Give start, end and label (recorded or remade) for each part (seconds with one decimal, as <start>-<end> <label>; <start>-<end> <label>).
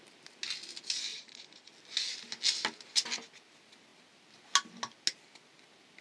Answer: 0.0-1.1 recorded; 1.1-1.7 remade; 1.7-6.0 recorded